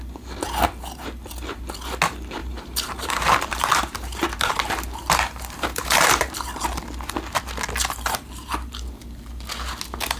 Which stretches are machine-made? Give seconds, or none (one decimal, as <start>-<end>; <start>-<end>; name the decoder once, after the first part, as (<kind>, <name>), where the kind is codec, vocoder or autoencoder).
2.4-6.3 (vocoder, BigVGAN v2)